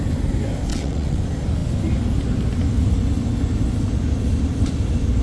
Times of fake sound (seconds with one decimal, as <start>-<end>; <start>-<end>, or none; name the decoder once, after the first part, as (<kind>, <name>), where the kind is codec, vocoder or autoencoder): 0.7-1.2 (vocoder, WaveNeXt)